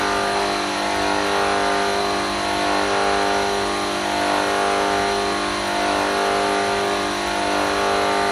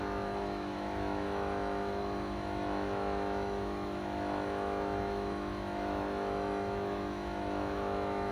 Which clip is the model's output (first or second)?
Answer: second